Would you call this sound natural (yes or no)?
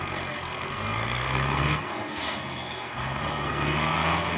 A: no